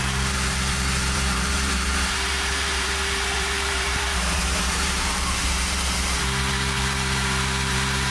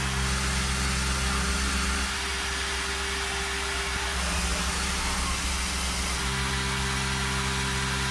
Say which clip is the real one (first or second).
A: second